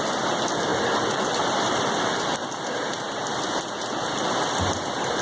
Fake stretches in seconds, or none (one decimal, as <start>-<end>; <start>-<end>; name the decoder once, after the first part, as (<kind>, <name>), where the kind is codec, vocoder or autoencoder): none

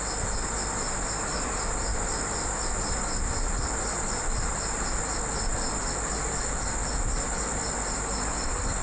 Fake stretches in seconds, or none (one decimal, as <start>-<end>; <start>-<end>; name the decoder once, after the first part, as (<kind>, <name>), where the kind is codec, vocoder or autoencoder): none

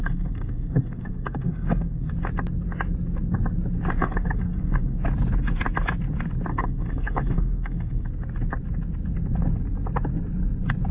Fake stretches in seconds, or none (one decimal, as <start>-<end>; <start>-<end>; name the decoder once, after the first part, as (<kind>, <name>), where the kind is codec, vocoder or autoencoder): 0.0-2.1 (codec, SNAC); 4.0-5.0; 6.5-8.1

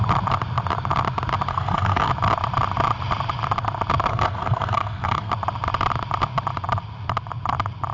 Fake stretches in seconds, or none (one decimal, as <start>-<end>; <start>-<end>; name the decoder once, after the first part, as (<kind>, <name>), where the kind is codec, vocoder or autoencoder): 1.5-2.1 (codec, SNAC); 4.1-5.3

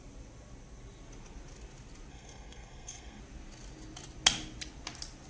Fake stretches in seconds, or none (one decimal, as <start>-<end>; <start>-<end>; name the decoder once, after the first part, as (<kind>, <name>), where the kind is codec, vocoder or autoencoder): 2.1-3.2 (codec, SNAC)